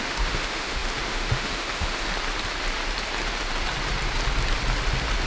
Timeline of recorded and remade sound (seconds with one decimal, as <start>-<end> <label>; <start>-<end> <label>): 0.0-2.1 remade; 2.1-5.3 recorded